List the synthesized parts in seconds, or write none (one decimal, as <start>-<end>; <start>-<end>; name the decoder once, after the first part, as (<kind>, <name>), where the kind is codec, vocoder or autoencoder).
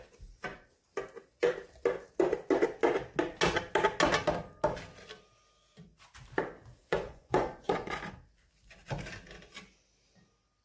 6.8-8.1 (vocoder, Vocos)